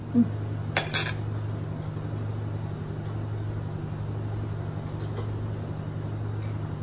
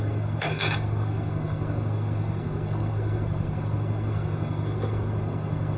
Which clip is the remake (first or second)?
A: second